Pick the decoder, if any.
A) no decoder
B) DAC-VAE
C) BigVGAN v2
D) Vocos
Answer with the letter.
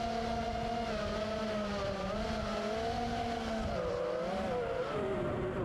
A